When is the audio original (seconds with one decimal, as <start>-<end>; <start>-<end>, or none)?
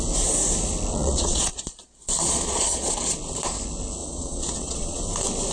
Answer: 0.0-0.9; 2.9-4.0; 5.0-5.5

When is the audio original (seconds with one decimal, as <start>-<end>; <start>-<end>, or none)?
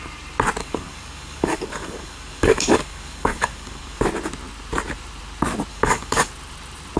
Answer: 0.0-0.6; 4.0-5.7; 6.3-7.0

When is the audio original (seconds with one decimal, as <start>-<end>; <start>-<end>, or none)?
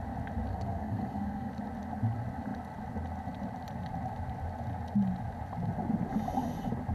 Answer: 0.0-0.5; 1.5-6.9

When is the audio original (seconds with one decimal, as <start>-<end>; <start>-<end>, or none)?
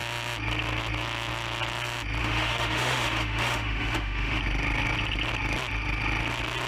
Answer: 0.0-2.2; 4.4-6.7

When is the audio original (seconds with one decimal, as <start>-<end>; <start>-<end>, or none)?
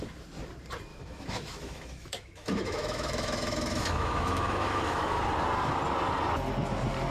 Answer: 0.0-0.9; 5.2-7.1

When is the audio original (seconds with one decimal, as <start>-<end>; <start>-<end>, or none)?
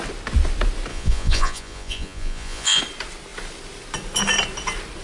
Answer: 0.0-0.9; 2.8-5.0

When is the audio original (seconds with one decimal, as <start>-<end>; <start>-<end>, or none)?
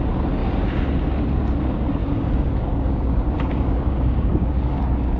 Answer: 0.0-2.0; 4.8-5.2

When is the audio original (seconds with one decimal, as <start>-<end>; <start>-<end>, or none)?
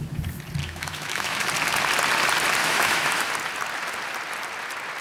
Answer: 0.0-0.6; 1.5-2.6; 3.3-5.0